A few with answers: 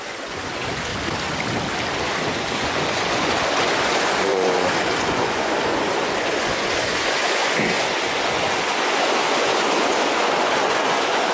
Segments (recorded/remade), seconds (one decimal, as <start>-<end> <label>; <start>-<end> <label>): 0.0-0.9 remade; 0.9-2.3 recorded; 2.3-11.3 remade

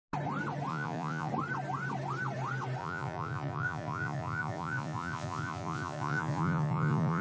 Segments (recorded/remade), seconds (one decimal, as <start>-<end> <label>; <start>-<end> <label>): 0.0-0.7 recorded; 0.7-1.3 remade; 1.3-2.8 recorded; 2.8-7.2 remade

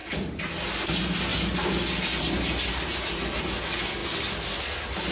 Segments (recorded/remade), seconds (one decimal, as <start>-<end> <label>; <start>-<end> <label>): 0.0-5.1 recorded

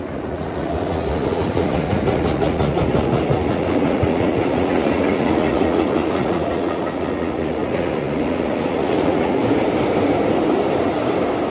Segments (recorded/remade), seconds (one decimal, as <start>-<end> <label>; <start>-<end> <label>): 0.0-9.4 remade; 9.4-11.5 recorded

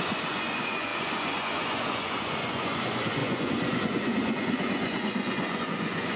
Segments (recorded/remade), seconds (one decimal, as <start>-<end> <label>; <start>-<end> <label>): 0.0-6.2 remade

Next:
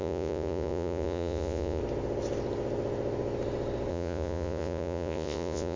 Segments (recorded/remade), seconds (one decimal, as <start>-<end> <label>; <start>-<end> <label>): 0.0-1.8 remade; 1.8-3.9 recorded; 3.9-5.8 remade

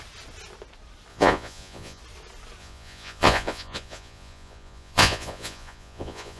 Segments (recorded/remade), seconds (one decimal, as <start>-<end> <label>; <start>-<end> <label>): 0.0-1.1 recorded; 1.1-2.0 remade; 2.0-2.6 recorded; 2.6-6.4 remade

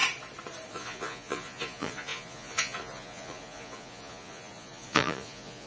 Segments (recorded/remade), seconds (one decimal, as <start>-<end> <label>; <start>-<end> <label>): 0.0-0.7 recorded; 0.7-5.7 remade